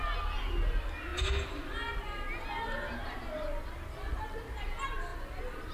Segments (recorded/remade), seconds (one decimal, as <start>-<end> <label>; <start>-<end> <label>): 0.0-5.7 recorded